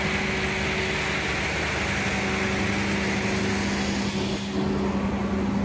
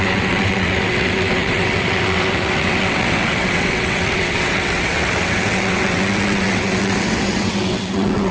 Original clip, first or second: first